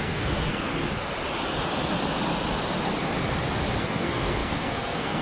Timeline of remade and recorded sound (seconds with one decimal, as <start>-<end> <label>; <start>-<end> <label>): 0.0-0.7 remade; 0.7-3.8 recorded; 3.8-5.2 remade